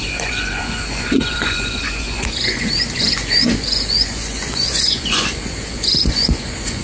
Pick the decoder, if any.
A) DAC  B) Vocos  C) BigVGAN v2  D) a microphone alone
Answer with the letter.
B